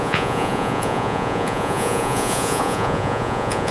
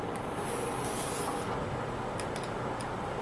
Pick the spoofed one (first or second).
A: first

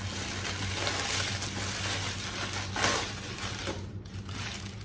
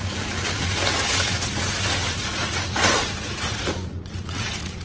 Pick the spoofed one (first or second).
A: second